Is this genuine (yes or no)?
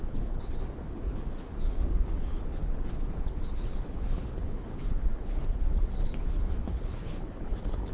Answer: no